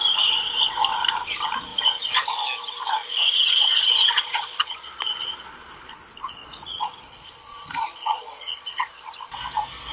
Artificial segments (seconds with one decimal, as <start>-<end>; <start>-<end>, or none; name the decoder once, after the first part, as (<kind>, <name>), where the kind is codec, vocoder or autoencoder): 3.0-5.9 (vocoder, Vocos); 6.4-8.9